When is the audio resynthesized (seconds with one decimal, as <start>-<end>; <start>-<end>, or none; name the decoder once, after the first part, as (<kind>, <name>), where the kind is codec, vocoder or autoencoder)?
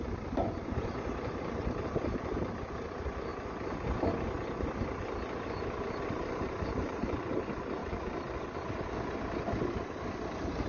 0.0-3.3 (vocoder, BigVGAN v2); 6.0-7.8; 9.6-10.7